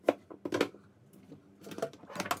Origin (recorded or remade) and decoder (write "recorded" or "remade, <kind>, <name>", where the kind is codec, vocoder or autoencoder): recorded